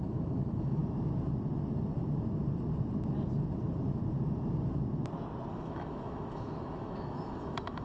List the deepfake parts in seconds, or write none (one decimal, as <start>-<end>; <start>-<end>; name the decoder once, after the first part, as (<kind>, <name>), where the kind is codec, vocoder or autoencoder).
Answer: 0.0-0.8 (autoencoder, DAC-VAE); 5.5-7.8